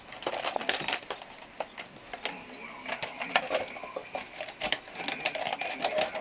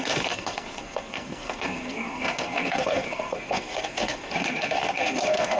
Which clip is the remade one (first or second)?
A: second